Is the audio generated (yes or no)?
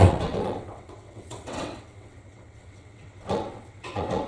yes